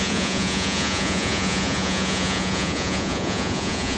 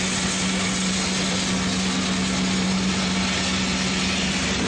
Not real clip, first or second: first